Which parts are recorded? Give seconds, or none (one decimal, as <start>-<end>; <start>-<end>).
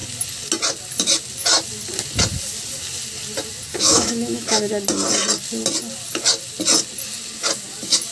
0.0-3.7; 4.7-8.1